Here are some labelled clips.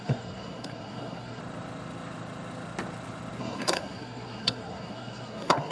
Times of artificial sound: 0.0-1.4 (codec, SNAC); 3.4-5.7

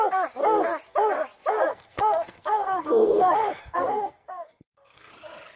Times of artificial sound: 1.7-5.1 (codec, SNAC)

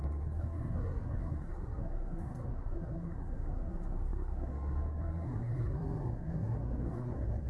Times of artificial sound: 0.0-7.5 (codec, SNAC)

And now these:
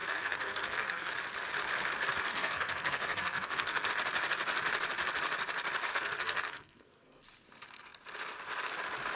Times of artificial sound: 0.0-1.1 (codec, SNAC); 2.3-3.9; 5.9-7.2

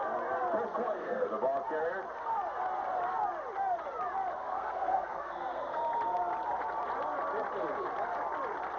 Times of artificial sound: 0.7-1.3 (codec, SNAC); 4.4-5.8

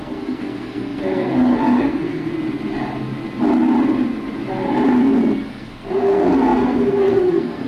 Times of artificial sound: 0.0-2.3 (codec, SNAC); 5.5-7.7